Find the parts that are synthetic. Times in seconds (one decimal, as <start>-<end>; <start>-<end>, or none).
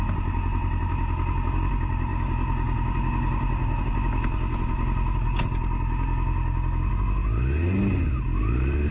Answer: none